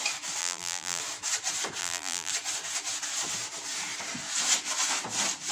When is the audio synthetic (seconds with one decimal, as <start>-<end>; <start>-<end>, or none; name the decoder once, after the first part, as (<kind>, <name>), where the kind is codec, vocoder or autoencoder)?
0.4-1.0 (vocoder, BigVGAN v2); 1.8-2.3